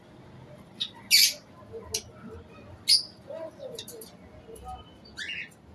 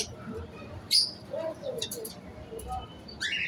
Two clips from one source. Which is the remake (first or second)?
second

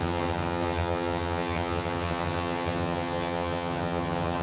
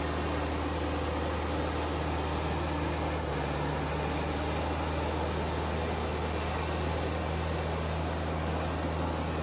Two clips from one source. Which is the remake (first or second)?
first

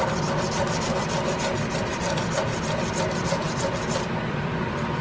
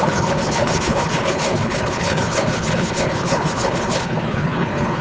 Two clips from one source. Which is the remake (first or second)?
second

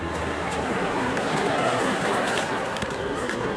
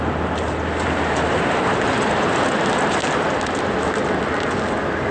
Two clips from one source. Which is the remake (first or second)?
first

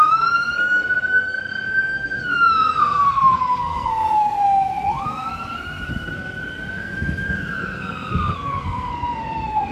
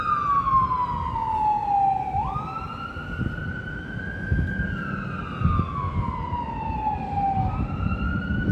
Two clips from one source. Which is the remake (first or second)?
first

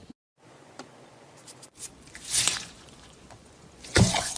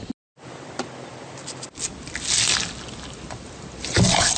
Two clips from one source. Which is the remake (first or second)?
first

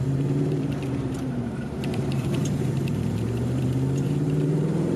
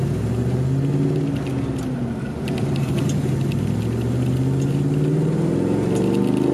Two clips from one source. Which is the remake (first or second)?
first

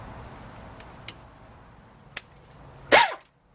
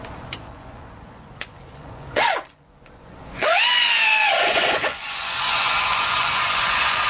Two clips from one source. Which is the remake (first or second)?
second